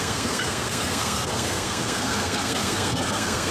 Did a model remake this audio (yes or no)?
yes